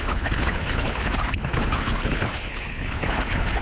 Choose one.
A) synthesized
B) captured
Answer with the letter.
A